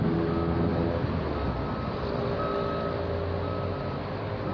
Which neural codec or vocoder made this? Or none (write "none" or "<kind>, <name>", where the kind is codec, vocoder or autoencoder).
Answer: none